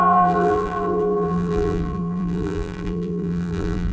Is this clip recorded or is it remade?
remade